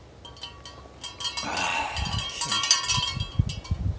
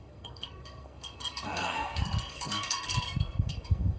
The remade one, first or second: second